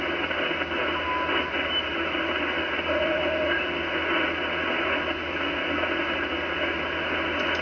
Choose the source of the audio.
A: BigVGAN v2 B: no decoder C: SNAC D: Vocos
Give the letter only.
B